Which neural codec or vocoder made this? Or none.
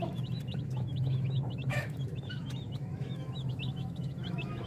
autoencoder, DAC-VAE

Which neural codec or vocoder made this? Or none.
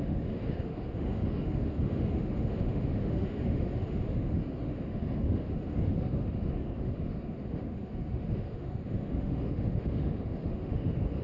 autoencoder, DAC-VAE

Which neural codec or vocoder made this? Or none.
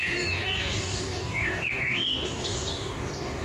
codec, DAC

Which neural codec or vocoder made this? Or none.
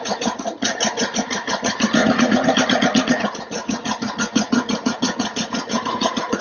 vocoder, Vocos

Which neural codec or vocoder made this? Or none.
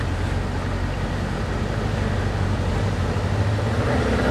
none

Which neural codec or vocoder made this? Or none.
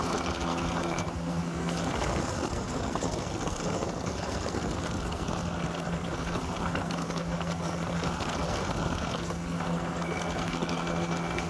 codec, SNAC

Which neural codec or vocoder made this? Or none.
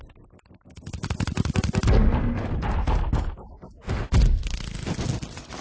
none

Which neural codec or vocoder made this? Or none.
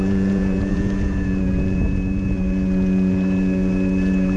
vocoder, Vocos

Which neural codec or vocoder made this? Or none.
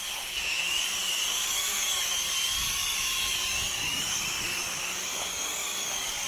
codec, DAC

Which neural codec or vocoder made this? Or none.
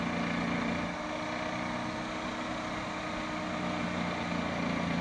none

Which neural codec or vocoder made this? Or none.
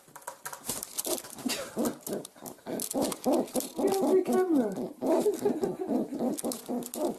none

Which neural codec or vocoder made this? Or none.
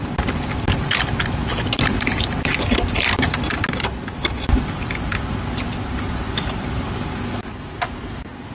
none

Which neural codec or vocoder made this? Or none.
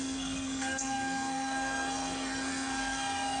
codec, SNAC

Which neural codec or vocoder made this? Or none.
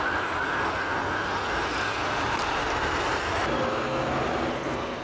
none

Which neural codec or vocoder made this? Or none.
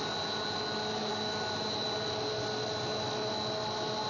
none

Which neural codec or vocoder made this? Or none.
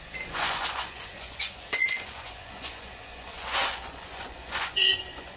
vocoder, Vocos